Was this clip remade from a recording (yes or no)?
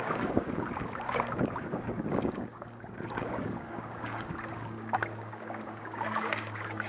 yes